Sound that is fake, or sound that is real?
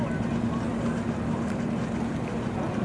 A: real